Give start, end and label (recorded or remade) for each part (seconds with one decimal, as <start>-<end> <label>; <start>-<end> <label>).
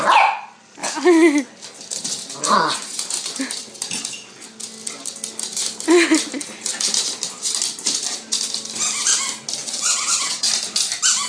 0.0-9.6 recorded; 9.6-10.5 remade; 10.5-11.3 recorded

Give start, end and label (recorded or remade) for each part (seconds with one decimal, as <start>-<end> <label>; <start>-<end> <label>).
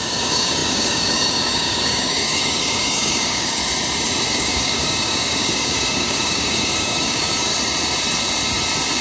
0.0-3.6 remade; 3.6-4.3 recorded; 4.3-7.5 remade; 7.5-9.0 recorded